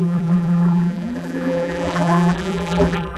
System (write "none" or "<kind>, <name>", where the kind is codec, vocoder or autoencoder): vocoder, BigVGAN v2